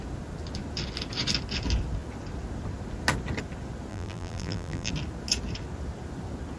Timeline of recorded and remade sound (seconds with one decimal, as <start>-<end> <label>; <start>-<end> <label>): 0.0-3.9 recorded; 3.9-4.9 remade; 4.9-6.6 recorded